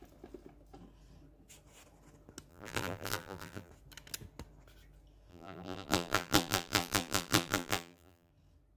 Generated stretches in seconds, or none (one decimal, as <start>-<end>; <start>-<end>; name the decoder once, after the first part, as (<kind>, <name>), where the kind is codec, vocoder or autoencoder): 2.5-3.7 (vocoder, BigVGAN v2); 5.3-8.3